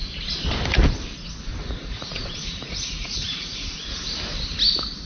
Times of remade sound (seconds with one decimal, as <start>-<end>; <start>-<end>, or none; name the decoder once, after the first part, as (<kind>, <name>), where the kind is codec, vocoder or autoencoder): 1.6-3.8 (vocoder, Vocos)